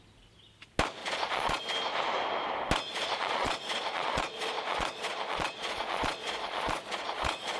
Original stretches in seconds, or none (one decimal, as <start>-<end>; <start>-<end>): 0.0-1.0; 1.6-2.9

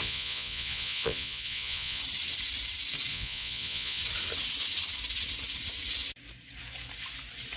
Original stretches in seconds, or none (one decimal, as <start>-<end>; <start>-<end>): 2.0-3.1; 4.0-7.6

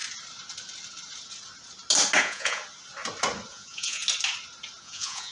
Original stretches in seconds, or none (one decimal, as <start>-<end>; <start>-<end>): 0.0-2.2; 2.6-3.5; 4.0-4.8

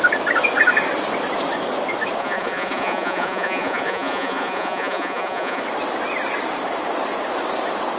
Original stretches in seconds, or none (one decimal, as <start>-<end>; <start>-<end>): 0.0-2.2; 5.6-8.0

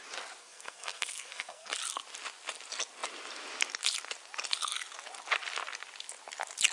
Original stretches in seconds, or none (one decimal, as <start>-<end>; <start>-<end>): 0.0-0.4; 1.7-6.7